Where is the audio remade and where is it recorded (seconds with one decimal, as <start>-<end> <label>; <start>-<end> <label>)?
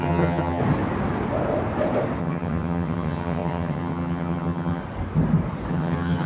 0.0-0.6 remade; 0.6-2.2 recorded; 2.2-4.8 remade; 4.8-5.7 recorded; 5.7-6.3 remade